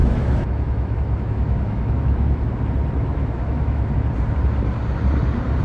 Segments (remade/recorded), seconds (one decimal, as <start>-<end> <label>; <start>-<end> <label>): 0.0-2.6 remade; 2.6-3.1 recorded; 3.1-3.9 remade; 3.9-5.6 recorded